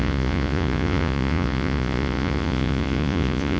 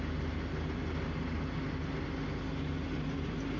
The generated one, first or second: first